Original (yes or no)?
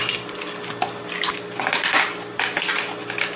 yes